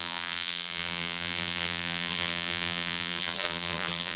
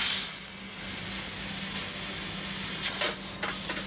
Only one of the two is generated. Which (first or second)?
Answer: first